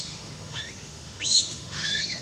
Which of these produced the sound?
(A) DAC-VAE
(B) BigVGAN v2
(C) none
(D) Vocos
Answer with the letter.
A